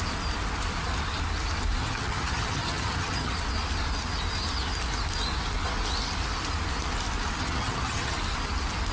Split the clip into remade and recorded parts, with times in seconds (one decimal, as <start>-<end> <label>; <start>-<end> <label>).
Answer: 0.0-1.8 recorded; 1.8-3.3 remade; 3.3-7.4 recorded; 7.4-8.2 remade; 8.2-8.9 recorded